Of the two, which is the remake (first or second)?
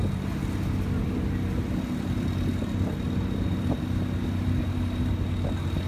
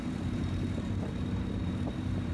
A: second